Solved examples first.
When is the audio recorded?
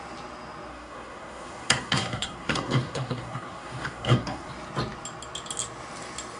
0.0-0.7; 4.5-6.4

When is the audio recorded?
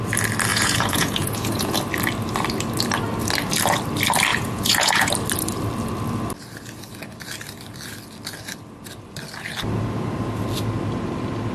0.0-0.5; 1.8-4.3; 5.1-11.5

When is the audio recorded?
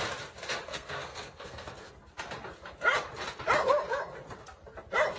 0.0-0.7; 1.9-5.2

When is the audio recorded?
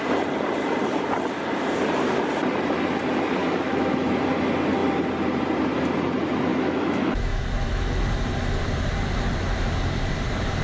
0.0-3.4; 4.1-6.5; 7.9-10.6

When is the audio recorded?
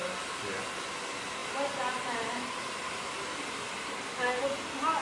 0.0-1.4; 4.4-5.0